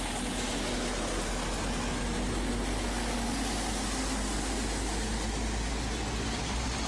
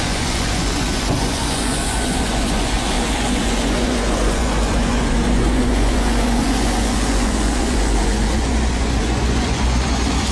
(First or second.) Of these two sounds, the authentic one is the first